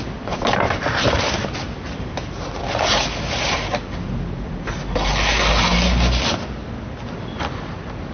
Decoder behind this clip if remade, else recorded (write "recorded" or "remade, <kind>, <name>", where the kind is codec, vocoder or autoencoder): recorded